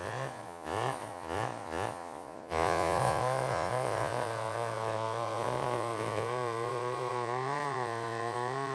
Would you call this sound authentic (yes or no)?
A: no